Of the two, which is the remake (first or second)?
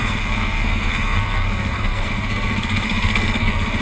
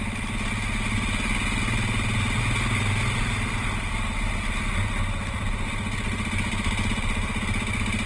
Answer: first